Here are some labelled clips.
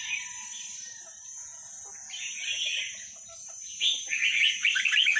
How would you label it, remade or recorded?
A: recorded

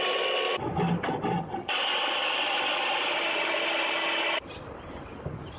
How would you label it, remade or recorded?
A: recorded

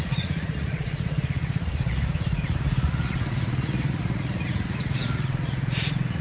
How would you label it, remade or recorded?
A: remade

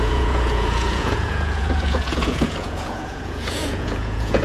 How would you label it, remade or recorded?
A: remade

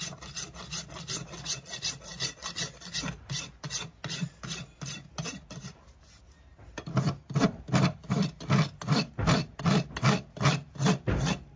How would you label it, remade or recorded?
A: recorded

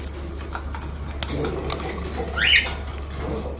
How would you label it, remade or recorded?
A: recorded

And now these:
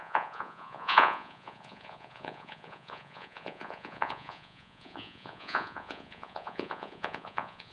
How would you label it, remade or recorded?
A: remade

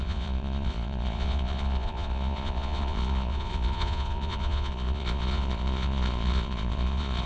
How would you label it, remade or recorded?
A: remade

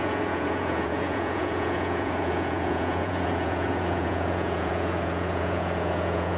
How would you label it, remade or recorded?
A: remade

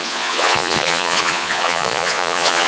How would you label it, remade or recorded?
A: remade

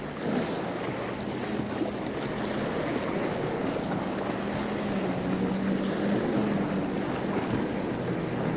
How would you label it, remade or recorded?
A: recorded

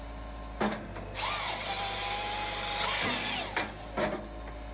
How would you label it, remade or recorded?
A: recorded